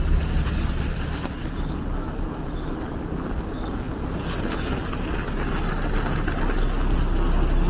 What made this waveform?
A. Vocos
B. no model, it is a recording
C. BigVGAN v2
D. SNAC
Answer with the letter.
B